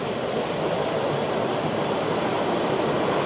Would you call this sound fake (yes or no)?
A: no